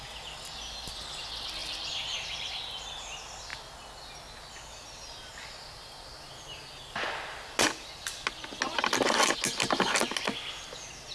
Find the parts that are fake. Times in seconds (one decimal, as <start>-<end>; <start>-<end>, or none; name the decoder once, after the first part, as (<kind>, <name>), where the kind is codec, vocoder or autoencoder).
1.6-2.5 (vocoder, BigVGAN v2)